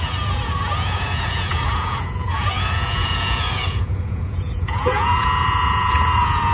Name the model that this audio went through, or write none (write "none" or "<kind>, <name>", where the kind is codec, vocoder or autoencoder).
vocoder, Vocos